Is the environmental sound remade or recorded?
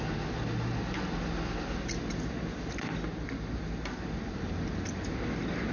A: recorded